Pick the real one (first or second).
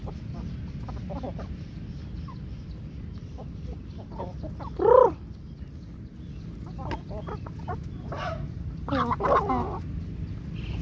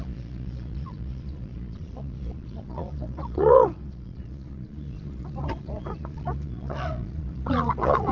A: first